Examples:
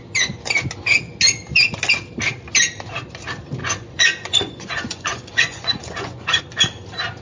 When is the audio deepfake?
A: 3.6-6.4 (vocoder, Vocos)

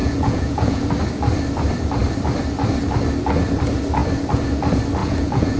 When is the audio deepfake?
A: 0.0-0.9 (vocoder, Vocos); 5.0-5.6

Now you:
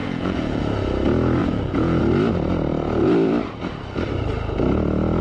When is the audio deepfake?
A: 0.0-0.6 (vocoder, Vocos); 1.4-2.0

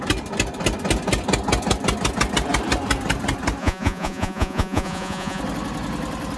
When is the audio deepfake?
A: 3.6-5.4 (vocoder, Vocos)

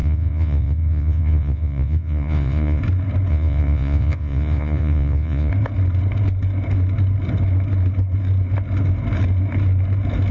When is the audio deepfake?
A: 0.0-2.8 (vocoder, Vocos); 3.3-5.5